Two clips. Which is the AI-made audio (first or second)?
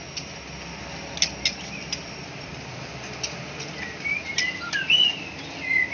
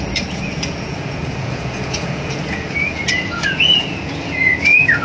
second